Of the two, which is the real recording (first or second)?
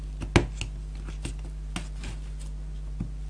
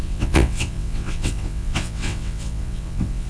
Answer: first